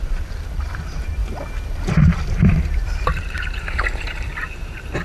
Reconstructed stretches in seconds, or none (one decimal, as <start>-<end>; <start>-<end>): 0.0-1.2; 1.9-5.0